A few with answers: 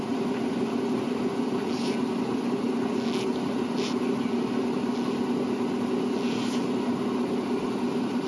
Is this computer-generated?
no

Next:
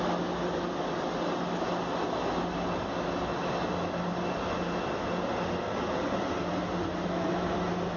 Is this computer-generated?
no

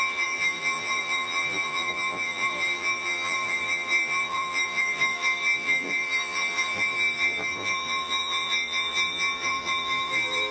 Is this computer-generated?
yes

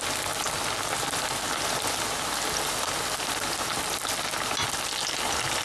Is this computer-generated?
no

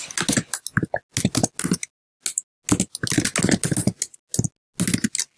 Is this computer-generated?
no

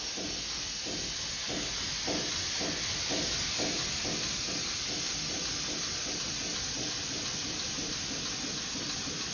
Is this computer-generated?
no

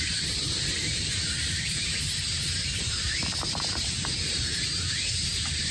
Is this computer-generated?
yes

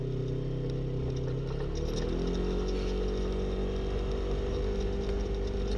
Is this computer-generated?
no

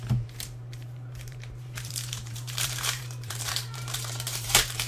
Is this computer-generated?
yes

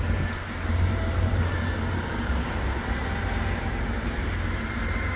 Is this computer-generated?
yes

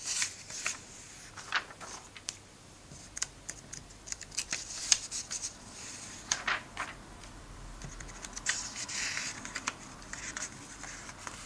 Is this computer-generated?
yes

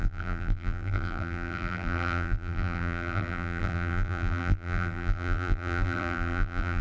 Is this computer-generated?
yes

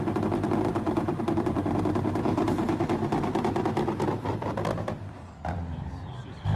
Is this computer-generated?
yes